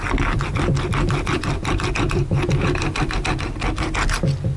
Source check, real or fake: real